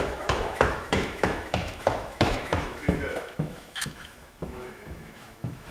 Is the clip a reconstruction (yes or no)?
yes